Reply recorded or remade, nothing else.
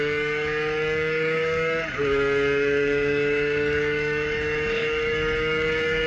remade